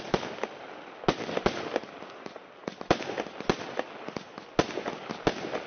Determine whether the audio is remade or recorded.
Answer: recorded